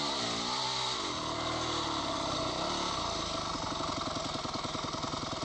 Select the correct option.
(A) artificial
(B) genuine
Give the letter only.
B